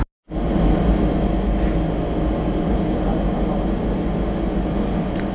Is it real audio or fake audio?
real